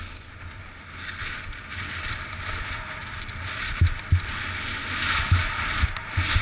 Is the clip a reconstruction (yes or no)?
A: no